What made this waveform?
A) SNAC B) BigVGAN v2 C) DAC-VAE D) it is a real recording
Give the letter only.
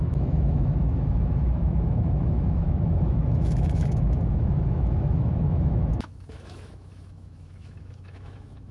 C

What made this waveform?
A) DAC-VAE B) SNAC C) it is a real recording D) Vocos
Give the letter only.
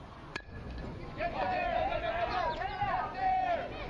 D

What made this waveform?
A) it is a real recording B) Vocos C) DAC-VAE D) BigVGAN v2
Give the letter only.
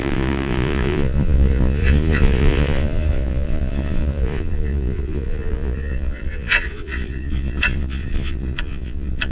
B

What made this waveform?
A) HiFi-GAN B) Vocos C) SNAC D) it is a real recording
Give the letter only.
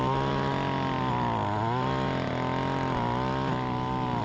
D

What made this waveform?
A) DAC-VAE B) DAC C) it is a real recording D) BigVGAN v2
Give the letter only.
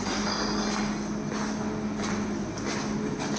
C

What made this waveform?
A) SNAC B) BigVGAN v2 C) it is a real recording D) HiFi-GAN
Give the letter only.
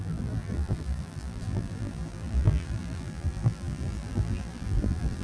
B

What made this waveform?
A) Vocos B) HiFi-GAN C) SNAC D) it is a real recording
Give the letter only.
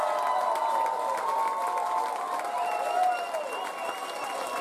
D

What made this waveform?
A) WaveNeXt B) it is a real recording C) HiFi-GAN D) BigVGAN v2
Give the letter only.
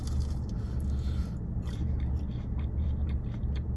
D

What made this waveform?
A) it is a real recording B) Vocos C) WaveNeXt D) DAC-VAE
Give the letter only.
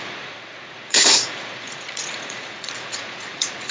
B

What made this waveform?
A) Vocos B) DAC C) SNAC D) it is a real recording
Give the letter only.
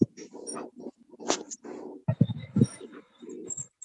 D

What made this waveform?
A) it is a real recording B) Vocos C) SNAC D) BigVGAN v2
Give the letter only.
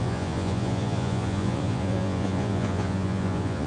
B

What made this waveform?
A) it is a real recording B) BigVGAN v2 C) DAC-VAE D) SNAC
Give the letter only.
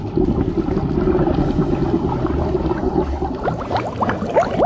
A